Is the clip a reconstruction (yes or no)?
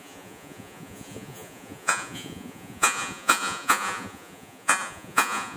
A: yes